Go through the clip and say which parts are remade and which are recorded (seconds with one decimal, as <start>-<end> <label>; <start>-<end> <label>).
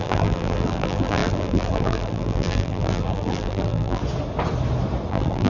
0.0-4.0 remade; 4.0-5.1 recorded; 5.1-5.5 remade